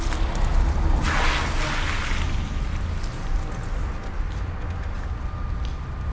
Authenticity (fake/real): real